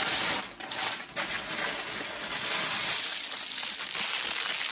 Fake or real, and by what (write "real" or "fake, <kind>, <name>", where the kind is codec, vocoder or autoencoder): real